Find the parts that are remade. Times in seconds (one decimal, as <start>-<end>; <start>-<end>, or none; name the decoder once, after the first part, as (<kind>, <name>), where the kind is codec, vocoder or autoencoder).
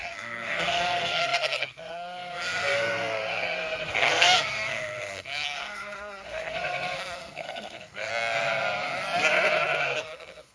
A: 0.0-8.1 (codec, SNAC); 9.8-10.5